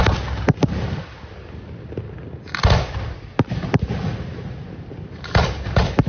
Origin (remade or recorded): recorded